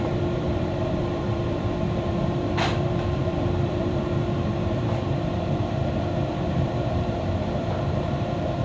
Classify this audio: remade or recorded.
remade